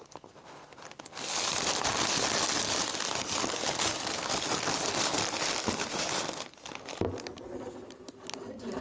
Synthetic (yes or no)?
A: no